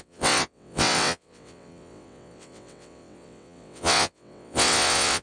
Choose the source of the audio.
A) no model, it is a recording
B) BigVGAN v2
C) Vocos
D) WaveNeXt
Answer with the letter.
D